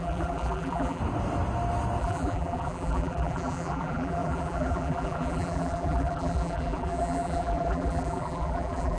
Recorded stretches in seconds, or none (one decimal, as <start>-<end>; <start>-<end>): 1.0-2.0